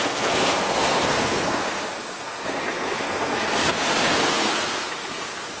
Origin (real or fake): fake